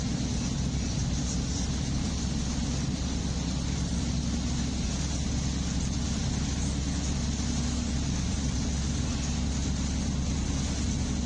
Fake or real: real